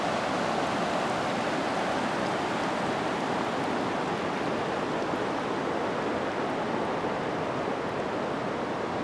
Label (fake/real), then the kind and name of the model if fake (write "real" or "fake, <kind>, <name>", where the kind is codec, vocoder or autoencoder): real